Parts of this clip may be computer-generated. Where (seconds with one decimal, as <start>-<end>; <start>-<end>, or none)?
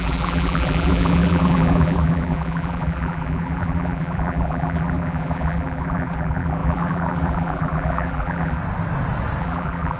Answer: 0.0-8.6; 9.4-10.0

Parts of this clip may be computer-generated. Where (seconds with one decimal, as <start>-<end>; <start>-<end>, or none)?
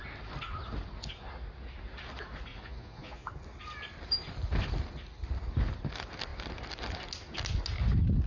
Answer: 2.5-3.3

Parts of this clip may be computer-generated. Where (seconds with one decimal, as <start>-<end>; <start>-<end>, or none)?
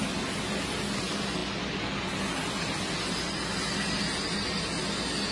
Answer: none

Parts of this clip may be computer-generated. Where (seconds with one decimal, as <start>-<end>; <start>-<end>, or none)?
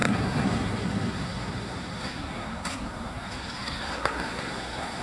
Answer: 0.0-5.0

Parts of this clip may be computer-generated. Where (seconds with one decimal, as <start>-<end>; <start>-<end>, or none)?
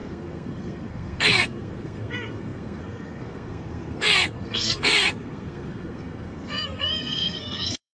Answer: 0.0-7.9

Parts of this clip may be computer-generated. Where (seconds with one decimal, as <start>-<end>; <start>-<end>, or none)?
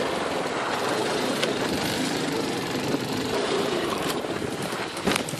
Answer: 1.0-4.2